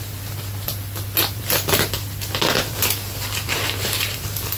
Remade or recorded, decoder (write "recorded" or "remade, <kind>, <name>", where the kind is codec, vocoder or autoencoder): remade, vocoder, BigVGAN v2